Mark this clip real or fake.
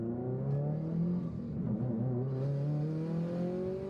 real